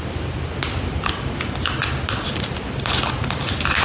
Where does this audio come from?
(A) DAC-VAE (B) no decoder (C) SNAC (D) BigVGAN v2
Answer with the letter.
B